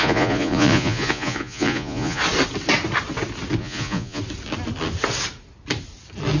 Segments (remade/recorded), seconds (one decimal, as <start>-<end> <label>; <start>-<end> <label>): 0.0-2.2 remade; 2.2-3.6 recorded; 3.6-4.2 remade; 4.2-6.4 recorded